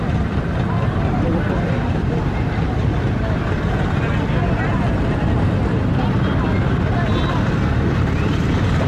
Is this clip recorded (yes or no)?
yes